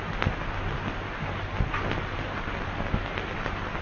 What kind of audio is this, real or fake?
real